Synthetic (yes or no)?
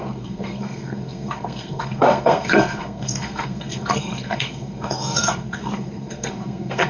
yes